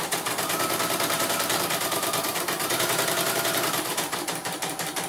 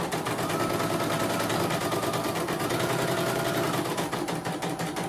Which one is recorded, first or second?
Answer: second